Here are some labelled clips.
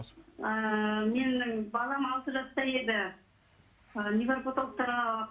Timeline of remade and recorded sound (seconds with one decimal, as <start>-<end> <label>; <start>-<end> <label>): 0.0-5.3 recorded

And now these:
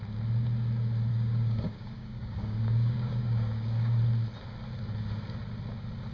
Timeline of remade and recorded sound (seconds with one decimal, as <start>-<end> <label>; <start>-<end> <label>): 0.0-1.1 recorded; 1.1-4.0 remade; 4.0-6.1 recorded

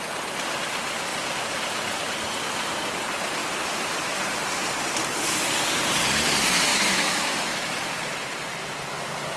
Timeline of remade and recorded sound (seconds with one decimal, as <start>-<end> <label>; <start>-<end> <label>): 0.0-6.7 recorded; 6.7-7.8 remade; 7.8-9.4 recorded